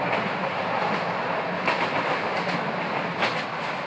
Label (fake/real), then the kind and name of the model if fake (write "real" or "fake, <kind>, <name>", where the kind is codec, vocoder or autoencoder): real